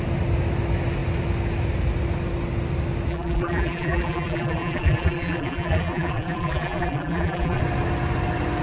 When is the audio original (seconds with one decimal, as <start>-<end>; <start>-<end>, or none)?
0.0-3.1; 7.6-8.6